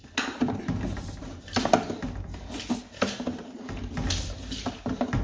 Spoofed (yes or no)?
no